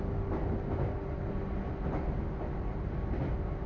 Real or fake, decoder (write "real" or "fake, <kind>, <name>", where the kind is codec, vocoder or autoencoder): real